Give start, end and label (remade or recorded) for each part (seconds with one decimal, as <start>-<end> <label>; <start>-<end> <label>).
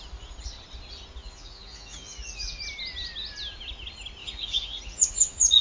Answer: 0.0-1.2 recorded; 1.2-2.6 remade; 2.6-4.2 recorded; 4.2-5.6 remade